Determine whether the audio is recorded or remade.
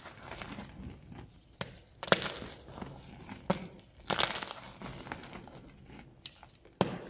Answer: recorded